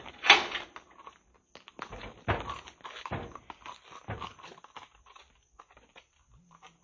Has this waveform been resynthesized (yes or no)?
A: no